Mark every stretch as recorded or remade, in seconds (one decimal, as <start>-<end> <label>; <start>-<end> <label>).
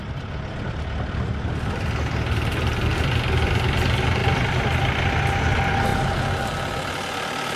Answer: 0.0-4.2 recorded; 4.2-4.8 remade; 4.8-5.9 recorded; 5.9-6.9 remade; 6.9-7.6 recorded